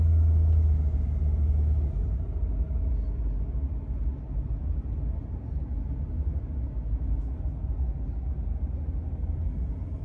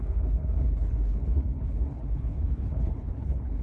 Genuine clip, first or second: first